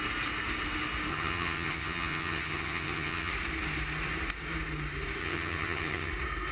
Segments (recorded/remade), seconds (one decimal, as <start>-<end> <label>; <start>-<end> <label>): 0.0-1.1 recorded; 1.1-3.3 remade; 3.3-5.2 recorded; 5.2-6.1 remade; 6.1-6.5 recorded